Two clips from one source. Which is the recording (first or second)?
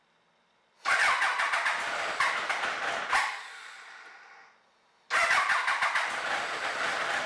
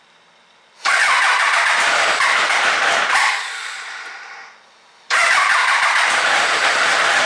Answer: first